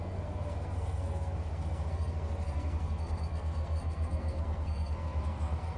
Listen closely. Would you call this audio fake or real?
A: fake